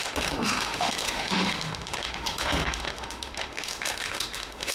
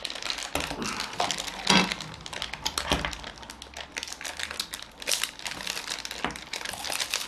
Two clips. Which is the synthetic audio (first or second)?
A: first